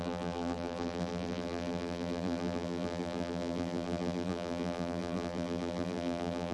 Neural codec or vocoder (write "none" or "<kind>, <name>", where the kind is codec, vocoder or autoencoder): vocoder, BigVGAN v2